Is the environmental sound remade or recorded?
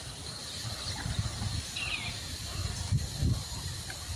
recorded